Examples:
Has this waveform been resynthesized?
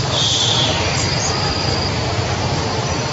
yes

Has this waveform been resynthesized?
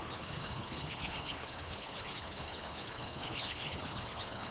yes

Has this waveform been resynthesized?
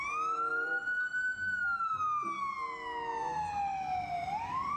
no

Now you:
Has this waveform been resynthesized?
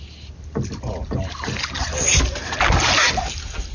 no